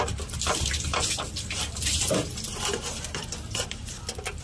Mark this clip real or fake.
real